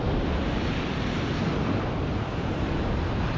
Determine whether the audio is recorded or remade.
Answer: recorded